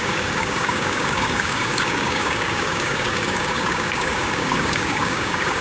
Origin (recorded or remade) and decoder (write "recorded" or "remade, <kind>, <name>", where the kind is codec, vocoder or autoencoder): remade, codec, DAC